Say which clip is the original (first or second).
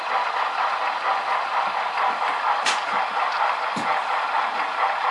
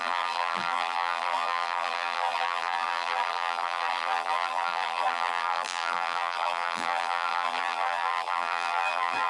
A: first